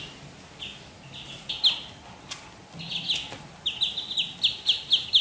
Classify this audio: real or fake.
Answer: real